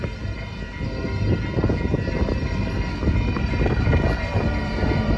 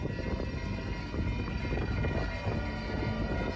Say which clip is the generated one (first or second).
first